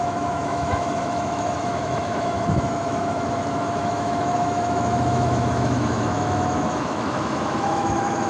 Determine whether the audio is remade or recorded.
remade